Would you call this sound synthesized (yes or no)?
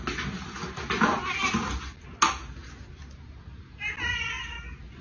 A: no